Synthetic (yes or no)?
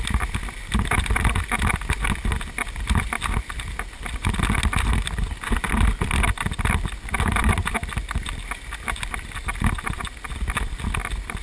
no